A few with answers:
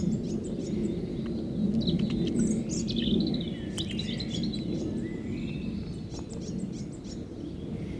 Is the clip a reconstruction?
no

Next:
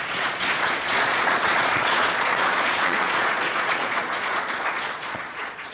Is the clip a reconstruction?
yes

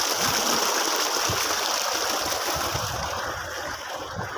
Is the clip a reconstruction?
no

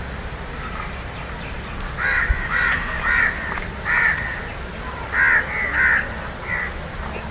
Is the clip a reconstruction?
no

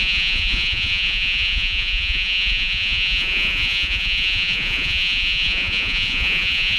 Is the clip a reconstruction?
yes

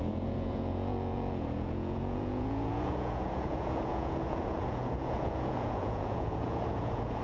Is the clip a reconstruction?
yes